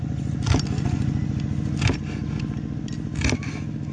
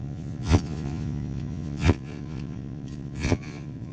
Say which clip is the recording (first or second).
first